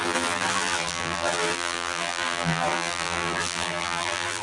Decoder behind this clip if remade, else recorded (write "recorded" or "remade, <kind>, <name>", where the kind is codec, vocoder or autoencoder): remade, vocoder, BigVGAN v2